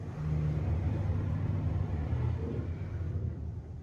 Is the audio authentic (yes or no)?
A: yes